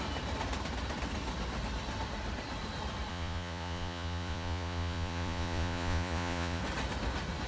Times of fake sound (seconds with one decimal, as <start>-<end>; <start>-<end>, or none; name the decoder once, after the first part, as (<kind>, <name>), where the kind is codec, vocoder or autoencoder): 3.1-6.6 (vocoder, Vocos)